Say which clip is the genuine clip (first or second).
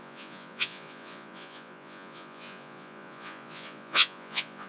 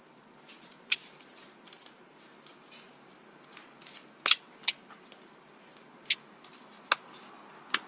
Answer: second